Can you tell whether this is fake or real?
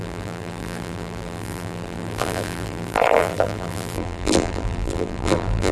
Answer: fake